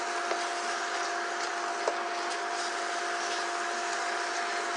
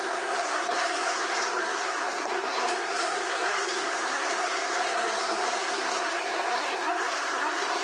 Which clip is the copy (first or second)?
second